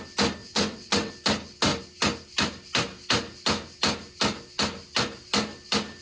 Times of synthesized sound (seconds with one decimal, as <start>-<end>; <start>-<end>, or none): 0.4-1.1